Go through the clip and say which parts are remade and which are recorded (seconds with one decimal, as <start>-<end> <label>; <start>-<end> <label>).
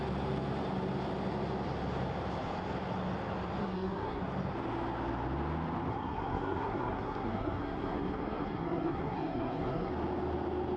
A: 0.0-3.6 recorded; 3.6-4.2 remade; 4.2-5.9 recorded; 5.9-9.9 remade; 9.9-10.8 recorded